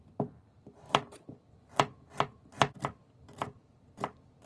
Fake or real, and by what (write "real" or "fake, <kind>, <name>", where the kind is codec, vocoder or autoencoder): real